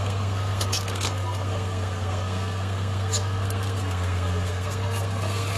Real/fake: fake